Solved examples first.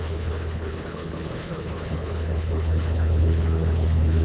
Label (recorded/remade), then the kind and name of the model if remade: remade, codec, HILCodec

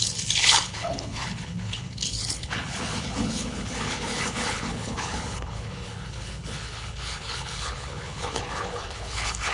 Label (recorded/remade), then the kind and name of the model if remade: remade, codec, HILCodec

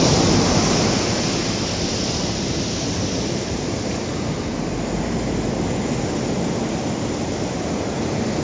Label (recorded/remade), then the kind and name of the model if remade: recorded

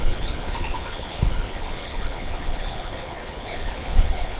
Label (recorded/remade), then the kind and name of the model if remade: remade, codec, HILCodec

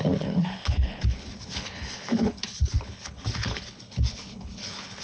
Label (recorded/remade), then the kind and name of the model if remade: remade, codec, HILCodec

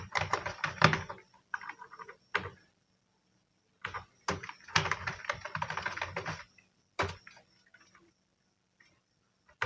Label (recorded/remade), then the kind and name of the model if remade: recorded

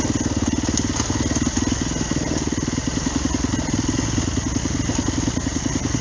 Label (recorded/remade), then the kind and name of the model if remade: recorded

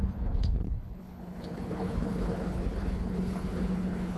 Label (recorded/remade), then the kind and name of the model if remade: remade, codec, HILCodec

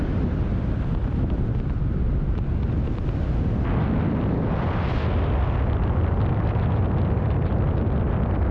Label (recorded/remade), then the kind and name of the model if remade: recorded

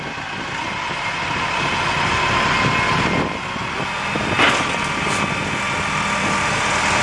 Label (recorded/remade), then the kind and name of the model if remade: recorded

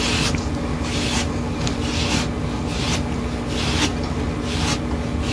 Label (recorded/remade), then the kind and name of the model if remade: recorded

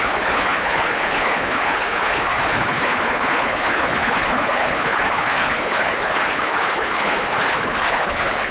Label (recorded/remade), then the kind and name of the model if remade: remade, codec, HILCodec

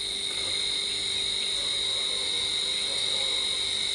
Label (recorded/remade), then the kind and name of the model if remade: recorded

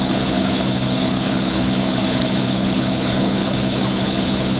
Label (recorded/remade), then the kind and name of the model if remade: remade, codec, HILCodec